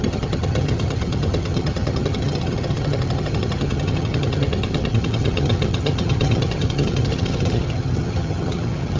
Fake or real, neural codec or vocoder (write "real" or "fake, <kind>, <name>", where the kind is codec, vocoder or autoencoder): fake, vocoder, HiFi-GAN